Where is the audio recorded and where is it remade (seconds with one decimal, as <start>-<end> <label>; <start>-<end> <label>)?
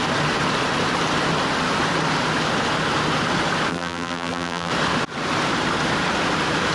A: 0.0-3.7 recorded; 3.7-4.7 remade; 4.7-6.7 recorded